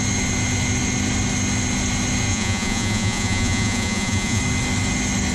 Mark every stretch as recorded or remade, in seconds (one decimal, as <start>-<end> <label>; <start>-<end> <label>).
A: 0.0-2.3 recorded; 2.3-4.4 remade; 4.4-5.3 recorded